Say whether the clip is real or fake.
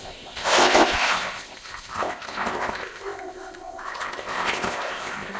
fake